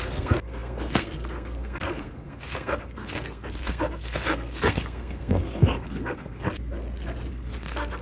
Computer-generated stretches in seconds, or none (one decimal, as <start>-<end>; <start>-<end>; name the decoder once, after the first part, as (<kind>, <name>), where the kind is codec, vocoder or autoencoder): 0.0-6.5 (codec, SNAC); 7.3-8.0

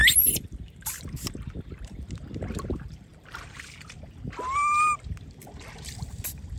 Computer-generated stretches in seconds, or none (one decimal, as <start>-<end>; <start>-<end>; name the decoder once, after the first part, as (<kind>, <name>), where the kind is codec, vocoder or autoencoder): 0.0-0.9 (vocoder, BigVGAN v2)